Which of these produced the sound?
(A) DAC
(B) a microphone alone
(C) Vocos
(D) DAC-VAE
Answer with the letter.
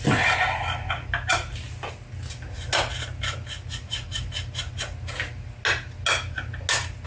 B